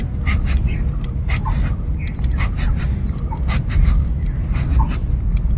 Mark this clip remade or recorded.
recorded